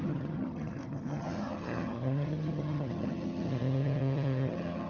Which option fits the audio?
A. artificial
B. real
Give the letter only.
A